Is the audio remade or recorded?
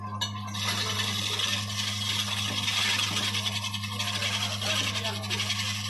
recorded